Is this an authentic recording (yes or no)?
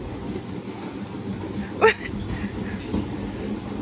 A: yes